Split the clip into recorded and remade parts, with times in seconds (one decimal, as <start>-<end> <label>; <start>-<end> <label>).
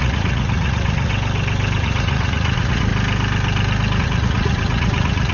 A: 0.0-1.1 remade; 1.1-1.8 recorded; 1.8-2.9 remade; 2.9-4.0 recorded; 4.0-5.3 remade